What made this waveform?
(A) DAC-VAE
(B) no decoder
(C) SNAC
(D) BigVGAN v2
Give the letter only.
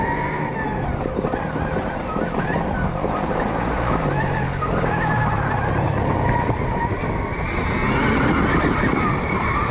B